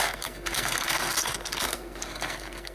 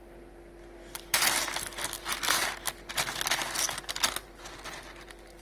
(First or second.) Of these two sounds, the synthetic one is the first